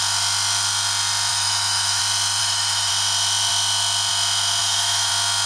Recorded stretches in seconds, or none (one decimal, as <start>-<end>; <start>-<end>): 0.0-1.3; 2.0-2.4; 2.9-4.6; 5.1-5.5